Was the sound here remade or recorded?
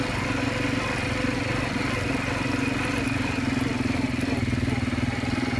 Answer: recorded